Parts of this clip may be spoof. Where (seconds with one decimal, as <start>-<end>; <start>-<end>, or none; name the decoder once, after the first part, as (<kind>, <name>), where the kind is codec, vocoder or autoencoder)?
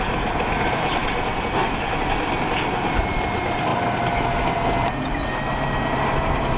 none